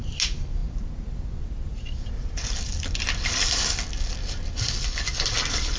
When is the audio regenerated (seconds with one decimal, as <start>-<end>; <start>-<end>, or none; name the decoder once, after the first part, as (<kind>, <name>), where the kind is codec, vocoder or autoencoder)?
none